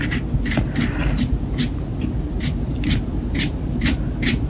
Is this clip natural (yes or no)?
no